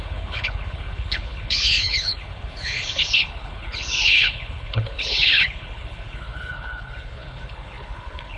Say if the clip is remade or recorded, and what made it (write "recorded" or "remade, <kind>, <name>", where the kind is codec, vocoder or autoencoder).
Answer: remade, codec, HILCodec